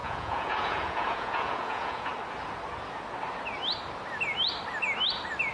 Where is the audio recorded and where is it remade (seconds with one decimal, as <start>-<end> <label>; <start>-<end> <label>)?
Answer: 0.0-2.1 remade; 2.1-5.5 recorded